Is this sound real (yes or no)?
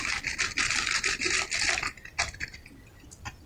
yes